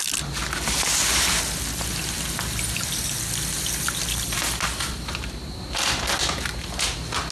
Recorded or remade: recorded